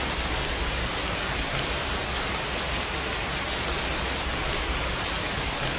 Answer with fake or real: real